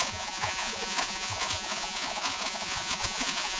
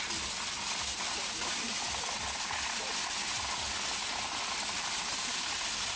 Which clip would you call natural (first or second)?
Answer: second